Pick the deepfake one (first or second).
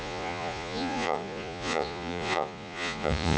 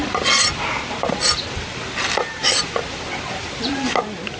first